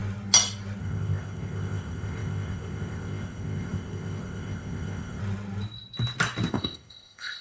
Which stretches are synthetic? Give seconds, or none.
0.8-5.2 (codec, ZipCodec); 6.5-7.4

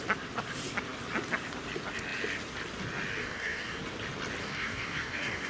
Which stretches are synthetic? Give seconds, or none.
3.2-3.8 (codec, DAC); 4.4-5.5

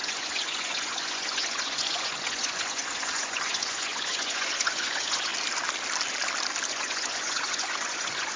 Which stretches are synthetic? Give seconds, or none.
0.0-5.3 (vocoder, Vocos); 6.7-8.4